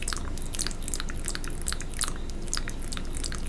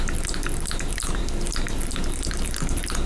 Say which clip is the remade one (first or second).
second